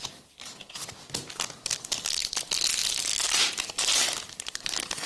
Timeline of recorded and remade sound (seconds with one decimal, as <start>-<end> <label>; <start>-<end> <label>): 0.0-5.1 recorded